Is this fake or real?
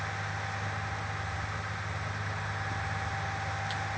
real